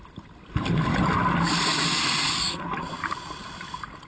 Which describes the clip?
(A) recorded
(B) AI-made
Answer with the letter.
A